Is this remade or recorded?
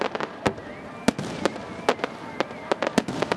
recorded